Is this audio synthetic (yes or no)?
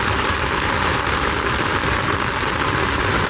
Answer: no